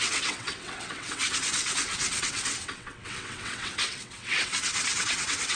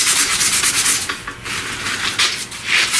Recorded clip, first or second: second